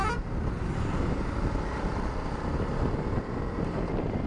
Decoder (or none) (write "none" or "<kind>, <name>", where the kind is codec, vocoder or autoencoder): none